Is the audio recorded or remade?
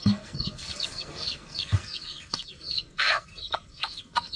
remade